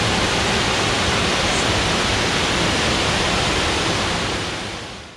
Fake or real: real